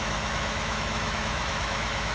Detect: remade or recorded remade